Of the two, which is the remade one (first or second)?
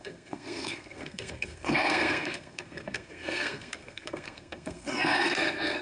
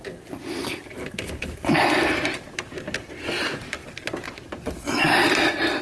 first